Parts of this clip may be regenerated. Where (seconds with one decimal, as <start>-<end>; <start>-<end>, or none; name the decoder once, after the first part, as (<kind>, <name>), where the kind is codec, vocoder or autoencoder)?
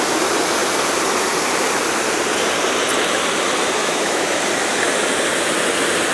3.8-4.4 (autoencoder, DAC-VAE)